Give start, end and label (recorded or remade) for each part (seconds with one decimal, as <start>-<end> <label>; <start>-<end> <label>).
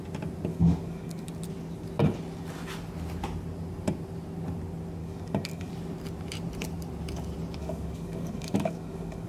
0.0-0.5 recorded; 0.5-1.3 remade; 1.3-5.0 recorded; 5.0-5.7 remade; 5.7-7.6 recorded; 7.6-9.3 remade